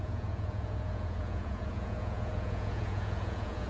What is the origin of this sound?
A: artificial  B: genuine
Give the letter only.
A